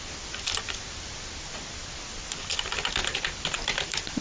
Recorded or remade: remade